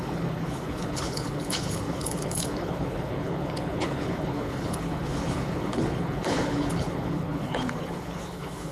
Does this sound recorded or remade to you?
remade